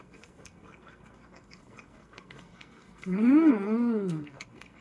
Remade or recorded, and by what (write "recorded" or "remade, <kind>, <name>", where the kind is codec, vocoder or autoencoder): remade, codec, SNAC